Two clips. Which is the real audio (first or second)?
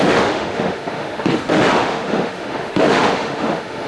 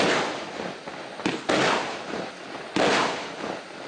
second